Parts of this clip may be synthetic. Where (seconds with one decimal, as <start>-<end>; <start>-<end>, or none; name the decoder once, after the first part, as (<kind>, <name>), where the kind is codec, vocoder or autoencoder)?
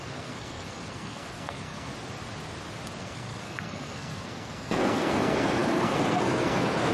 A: 0.0-1.9 (codec, SNAC); 3.0-6.9